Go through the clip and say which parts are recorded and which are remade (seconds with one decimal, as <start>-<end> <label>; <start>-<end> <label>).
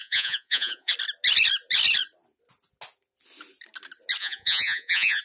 0.0-0.9 remade; 0.9-4.2 recorded; 4.2-5.2 remade